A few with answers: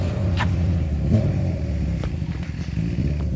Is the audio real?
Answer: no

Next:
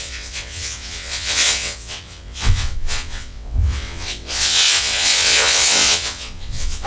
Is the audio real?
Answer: no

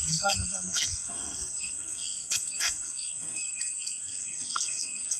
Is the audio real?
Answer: no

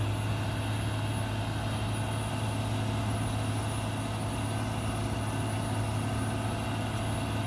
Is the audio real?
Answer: yes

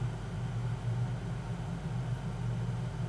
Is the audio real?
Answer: yes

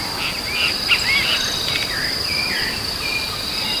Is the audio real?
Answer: no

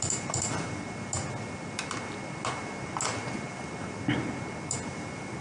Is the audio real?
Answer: yes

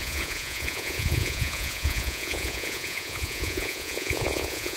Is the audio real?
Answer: no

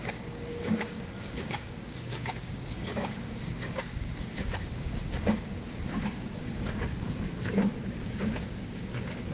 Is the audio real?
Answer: no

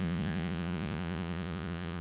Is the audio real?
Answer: no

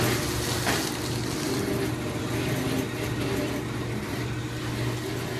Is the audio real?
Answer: yes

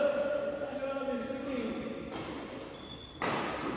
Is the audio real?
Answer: yes